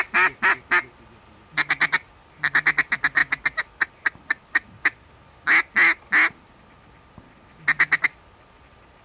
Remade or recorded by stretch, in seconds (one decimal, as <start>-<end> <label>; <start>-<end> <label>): 0.0-9.0 recorded